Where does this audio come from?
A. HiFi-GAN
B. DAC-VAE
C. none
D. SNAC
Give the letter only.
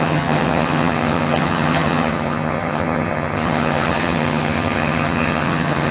A